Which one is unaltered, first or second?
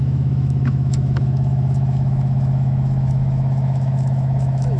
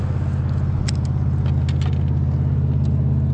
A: second